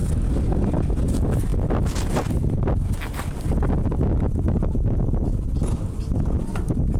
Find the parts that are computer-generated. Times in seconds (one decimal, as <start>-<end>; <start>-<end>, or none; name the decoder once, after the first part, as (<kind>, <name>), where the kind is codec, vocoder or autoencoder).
none